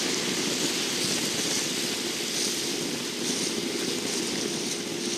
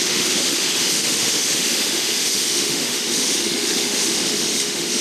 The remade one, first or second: second